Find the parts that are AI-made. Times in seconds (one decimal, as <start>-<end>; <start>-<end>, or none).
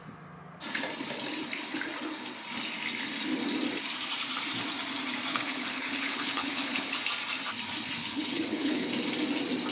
5.3-7.0; 8.0-8.9